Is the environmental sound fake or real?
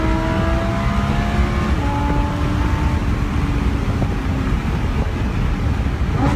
real